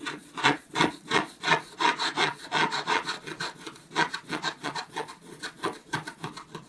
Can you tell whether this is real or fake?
fake